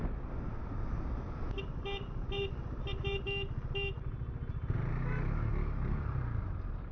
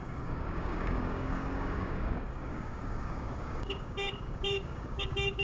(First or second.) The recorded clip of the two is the first